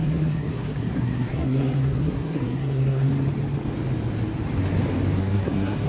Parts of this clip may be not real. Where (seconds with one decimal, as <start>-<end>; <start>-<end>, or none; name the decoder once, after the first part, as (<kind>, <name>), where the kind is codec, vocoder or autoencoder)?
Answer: 0.0-3.1 (codec, SNAC); 5.2-5.9